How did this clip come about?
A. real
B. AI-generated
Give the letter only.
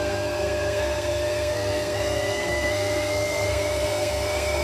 B